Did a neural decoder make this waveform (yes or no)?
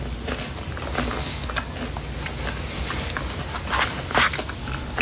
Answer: no